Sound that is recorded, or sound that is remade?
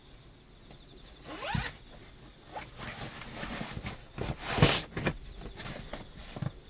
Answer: recorded